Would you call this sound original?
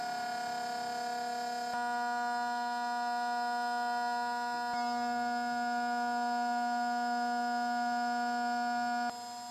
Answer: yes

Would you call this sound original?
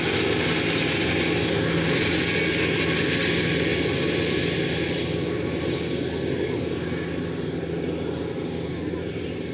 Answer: yes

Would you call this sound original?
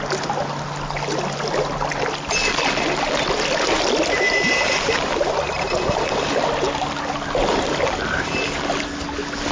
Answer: yes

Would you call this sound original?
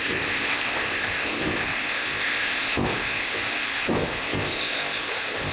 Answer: no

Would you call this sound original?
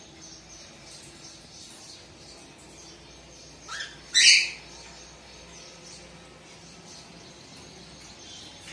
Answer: yes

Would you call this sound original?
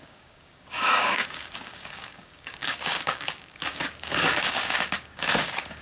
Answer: no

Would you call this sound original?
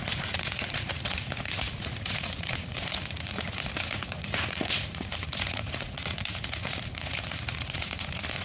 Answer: no